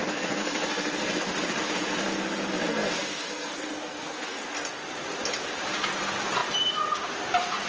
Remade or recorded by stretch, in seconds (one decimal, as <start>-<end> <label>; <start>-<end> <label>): 0.0-1.2 remade; 1.2-2.7 recorded; 2.7-4.4 remade; 4.4-7.7 recorded